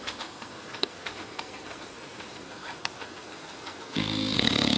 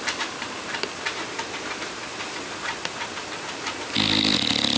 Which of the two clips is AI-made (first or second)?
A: first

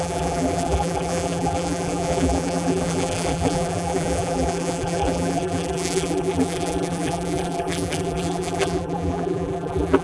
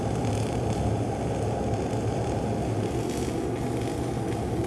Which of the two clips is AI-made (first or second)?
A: first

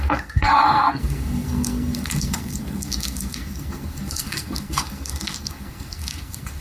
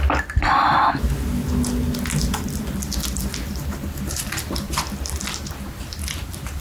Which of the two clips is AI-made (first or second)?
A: first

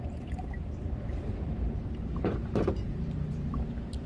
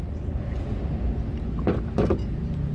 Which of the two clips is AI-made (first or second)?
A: first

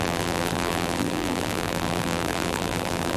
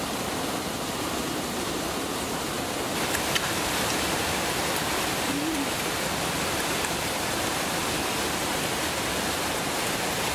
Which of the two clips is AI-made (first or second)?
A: first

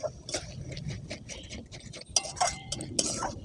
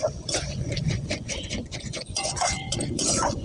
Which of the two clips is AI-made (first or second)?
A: second